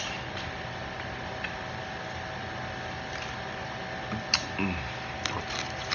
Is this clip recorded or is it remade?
recorded